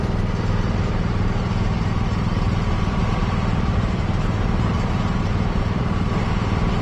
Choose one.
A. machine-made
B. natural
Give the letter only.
A